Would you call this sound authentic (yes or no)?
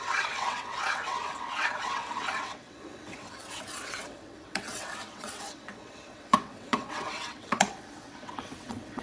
no